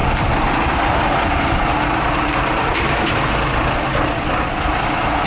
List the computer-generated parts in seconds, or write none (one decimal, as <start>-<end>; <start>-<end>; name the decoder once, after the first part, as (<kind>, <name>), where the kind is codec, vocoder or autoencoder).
none